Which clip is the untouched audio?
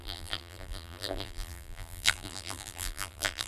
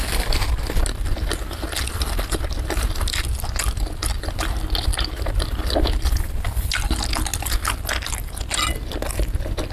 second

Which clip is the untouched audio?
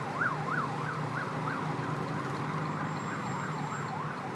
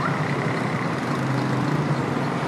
first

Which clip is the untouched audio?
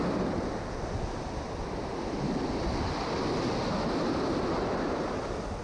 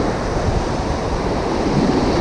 first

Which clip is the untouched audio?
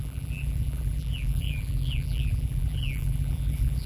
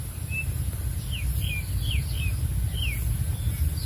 second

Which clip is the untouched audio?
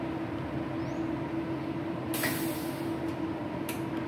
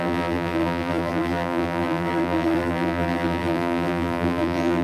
first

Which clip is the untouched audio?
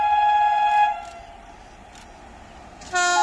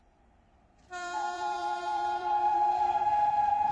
first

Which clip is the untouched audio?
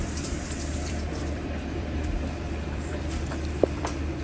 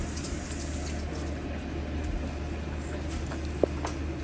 second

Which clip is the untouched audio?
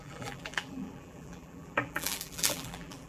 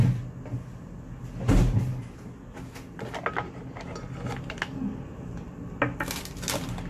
second